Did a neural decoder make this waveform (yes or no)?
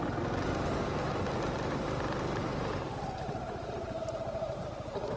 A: no